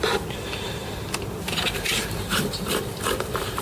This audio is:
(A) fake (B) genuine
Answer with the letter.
A